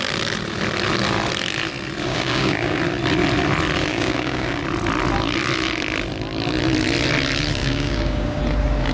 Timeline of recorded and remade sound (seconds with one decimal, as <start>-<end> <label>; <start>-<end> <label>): 0.0-2.1 recorded; 2.1-2.8 remade; 2.8-3.9 recorded; 3.9-4.6 remade; 4.6-7.6 recorded; 7.6-8.4 remade; 8.4-8.9 recorded